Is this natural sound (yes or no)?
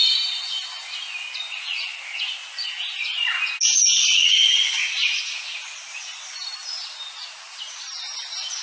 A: yes